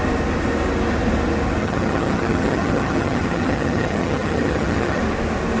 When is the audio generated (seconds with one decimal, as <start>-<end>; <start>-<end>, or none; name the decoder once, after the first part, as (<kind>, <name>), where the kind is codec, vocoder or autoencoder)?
1.6-5.0 (vocoder, HiFi-GAN)